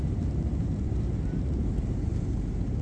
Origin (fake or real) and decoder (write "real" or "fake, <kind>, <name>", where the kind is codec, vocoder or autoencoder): fake, vocoder, BigVGAN v2